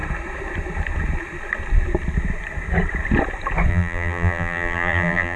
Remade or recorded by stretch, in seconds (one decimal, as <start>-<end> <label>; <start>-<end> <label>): 0.0-3.7 recorded; 3.7-5.4 remade